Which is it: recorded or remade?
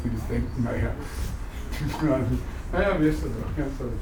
recorded